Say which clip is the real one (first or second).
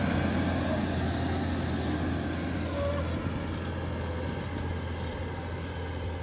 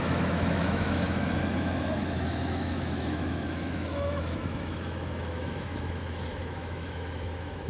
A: first